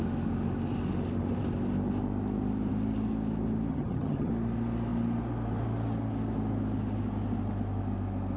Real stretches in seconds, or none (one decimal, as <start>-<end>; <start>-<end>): 0.0-3.7; 4.3-8.4